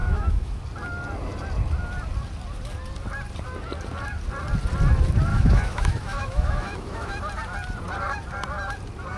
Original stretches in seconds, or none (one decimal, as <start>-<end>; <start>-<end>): 0.6-5.3; 7.2-9.2

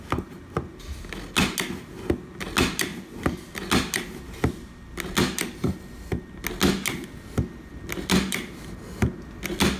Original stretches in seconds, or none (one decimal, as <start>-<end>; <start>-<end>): 0.0-9.8

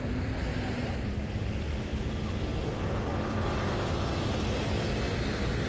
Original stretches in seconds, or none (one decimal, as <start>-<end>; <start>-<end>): 0.0-0.5; 1.1-5.7

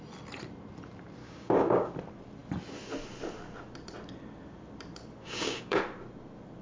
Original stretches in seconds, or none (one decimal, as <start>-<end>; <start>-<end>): 0.0-1.2; 1.9-5.2; 5.8-6.6

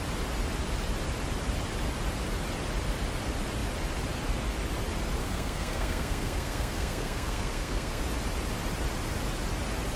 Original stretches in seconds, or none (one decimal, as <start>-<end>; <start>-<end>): 0.0-5.2; 8.0-10.0